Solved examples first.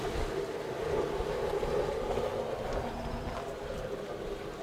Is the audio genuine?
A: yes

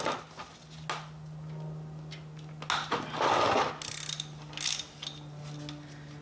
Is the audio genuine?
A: yes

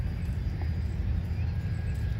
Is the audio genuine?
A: yes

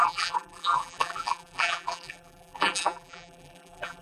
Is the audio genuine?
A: no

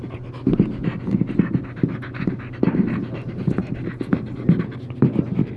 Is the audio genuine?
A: yes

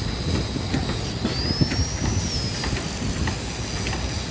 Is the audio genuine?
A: yes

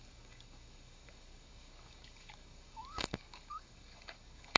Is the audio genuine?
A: no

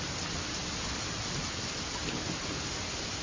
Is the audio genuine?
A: yes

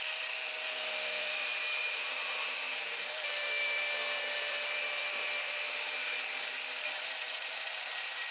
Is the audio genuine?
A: no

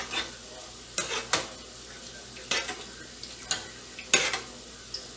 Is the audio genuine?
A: yes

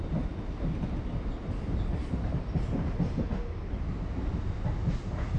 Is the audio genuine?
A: yes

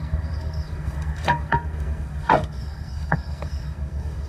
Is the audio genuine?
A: no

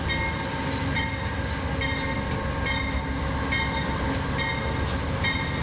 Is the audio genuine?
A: yes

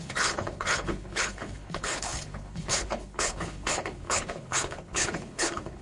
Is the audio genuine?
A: no